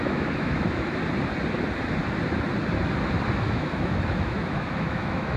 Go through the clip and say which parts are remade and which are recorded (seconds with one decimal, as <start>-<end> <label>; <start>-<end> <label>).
0.0-1.0 remade; 1.0-3.4 recorded; 3.4-5.4 remade